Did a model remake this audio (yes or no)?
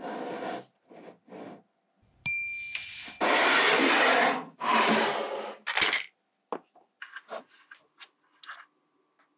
no